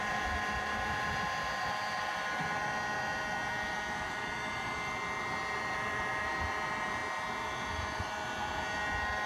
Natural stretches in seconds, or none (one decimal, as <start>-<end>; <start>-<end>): 0.0-9.3